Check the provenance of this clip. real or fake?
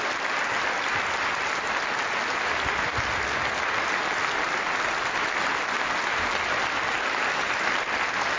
real